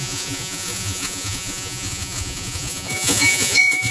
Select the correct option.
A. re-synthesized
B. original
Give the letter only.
A